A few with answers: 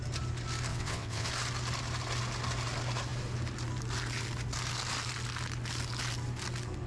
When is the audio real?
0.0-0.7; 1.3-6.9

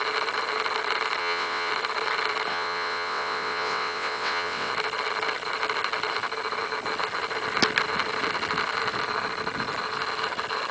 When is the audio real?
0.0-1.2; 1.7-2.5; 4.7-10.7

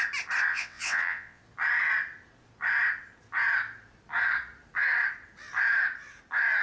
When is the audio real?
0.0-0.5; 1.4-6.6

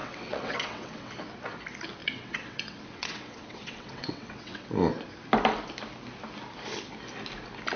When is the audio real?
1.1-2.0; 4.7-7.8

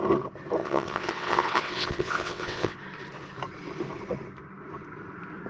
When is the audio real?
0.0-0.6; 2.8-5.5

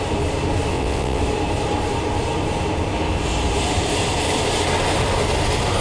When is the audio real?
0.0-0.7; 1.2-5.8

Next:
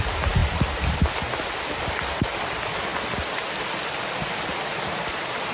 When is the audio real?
0.0-5.5

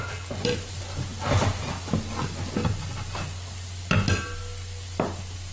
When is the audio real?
0.0-5.5